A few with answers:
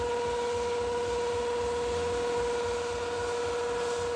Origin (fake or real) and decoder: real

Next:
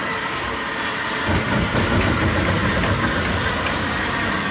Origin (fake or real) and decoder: real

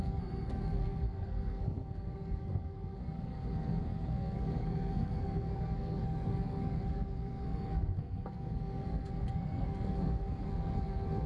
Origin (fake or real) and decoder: fake, codec, SNAC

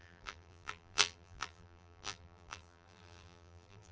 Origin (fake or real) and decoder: fake, vocoder, BigVGAN v2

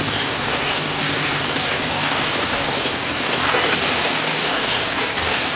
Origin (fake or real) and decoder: fake, codec, DAC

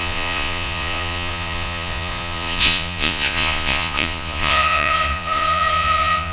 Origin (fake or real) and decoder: fake, vocoder, Vocos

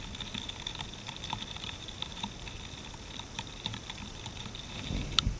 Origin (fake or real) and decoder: fake, vocoder, BigVGAN v2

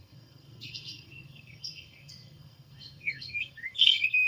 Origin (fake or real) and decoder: fake, codec, SNAC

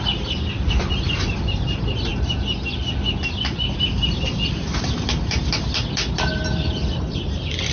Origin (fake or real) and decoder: real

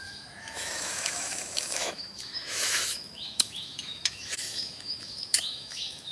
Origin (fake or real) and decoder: fake, autoencoder, DAC-VAE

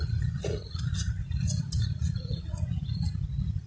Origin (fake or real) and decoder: fake, vocoder, Vocos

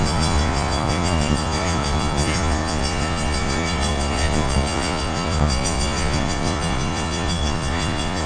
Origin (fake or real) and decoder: fake, vocoder, Vocos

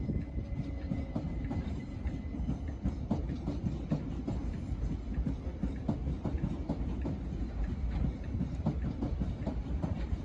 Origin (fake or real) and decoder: real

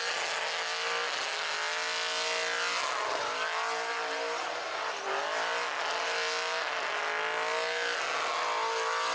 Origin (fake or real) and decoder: real